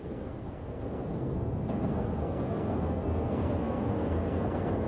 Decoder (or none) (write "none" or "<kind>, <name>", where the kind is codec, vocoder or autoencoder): codec, SNAC